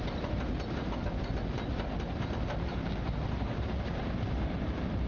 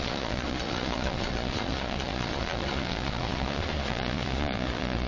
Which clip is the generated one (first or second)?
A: second